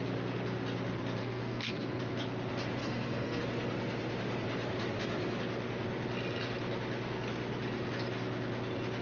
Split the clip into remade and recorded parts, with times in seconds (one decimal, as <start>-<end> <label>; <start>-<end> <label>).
0.0-1.2 recorded; 1.2-2.0 remade; 2.0-2.8 recorded; 2.8-3.4 remade; 3.4-9.0 recorded